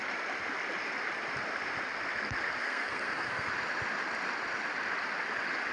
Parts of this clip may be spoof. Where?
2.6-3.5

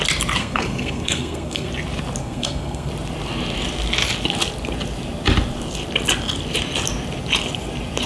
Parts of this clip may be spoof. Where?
0.4-1.7; 2.2-2.9